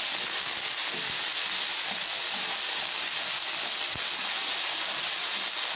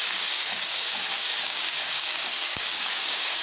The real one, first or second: first